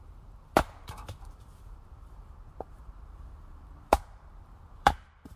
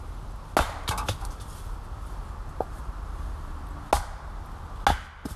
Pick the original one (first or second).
second